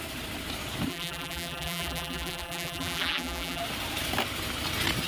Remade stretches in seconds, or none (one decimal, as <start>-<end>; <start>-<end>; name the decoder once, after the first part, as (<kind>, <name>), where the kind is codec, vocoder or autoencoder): 0.9-3.6 (vocoder, BigVGAN v2)